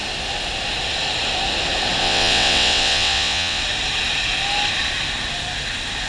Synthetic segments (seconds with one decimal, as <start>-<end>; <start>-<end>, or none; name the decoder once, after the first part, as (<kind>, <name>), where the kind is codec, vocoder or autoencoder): 2.0-3.6 (vocoder, WaveNeXt)

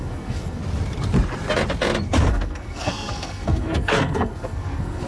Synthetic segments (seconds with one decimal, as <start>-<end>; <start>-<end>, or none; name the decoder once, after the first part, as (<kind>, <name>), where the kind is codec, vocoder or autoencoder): 0.0-0.6 (codec, SNAC); 2.3-5.1

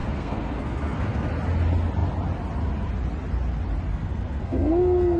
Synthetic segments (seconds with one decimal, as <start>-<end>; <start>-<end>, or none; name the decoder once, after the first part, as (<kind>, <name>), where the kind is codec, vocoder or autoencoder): 0.0-1.3 (codec, SNAC); 3.9-5.2